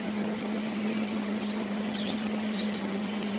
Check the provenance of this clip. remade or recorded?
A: remade